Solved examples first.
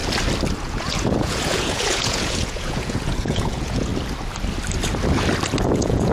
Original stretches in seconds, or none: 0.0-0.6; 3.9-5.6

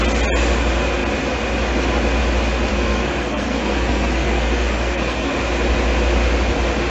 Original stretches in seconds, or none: 0.0-2.7; 5.3-6.9

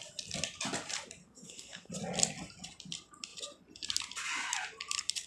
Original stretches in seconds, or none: 0.0-1.2; 1.9-5.3

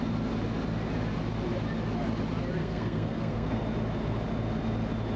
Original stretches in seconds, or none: 0.0-2.6; 3.6-5.2

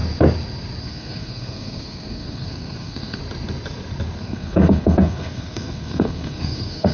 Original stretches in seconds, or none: 0.0-0.8; 3.2-4.2

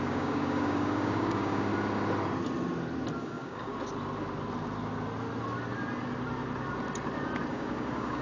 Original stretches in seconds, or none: 1.7-3.2; 3.7-7.5